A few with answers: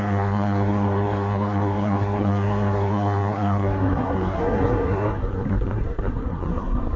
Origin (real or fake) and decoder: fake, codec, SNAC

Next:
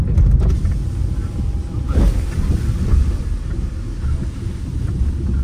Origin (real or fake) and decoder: real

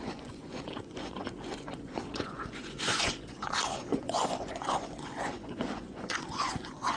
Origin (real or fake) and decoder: fake, vocoder, Vocos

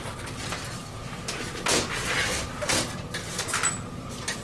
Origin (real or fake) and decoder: real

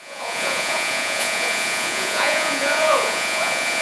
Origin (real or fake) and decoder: fake, vocoder, Vocos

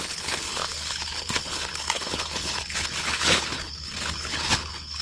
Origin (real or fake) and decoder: fake, codec, HILCodec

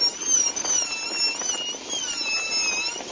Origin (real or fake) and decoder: real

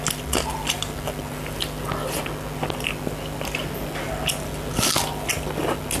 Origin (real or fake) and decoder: real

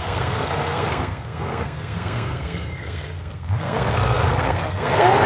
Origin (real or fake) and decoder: fake, codec, SNAC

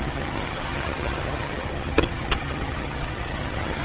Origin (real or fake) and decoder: fake, vocoder, HiFi-GAN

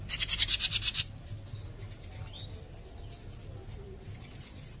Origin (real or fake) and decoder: real